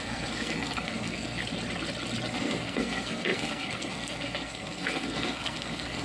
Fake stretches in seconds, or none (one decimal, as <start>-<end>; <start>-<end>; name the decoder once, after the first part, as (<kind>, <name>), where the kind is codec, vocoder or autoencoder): 0.0-1.4 (codec, SNAC); 2.4-6.0